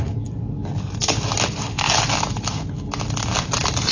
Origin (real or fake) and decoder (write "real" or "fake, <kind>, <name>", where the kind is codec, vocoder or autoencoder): real